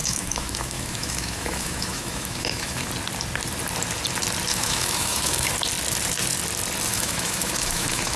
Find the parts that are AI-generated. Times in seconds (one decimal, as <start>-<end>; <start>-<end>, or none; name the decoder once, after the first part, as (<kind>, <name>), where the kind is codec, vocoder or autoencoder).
0.0-2.9 (autoencoder, DAC-VAE); 4.5-5.5; 6.9-8.2